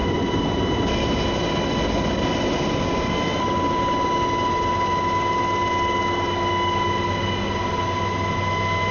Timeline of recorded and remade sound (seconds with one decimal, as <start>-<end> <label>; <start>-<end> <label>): 0.0-8.9 recorded